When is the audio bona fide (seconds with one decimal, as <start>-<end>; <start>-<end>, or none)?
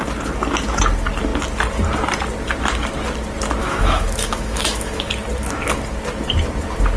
0.0-3.6; 5.1-7.0